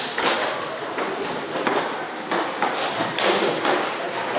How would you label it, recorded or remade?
recorded